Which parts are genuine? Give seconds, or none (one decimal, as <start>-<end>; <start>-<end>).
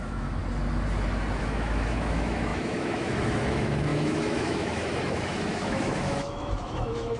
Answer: 0.4-1.4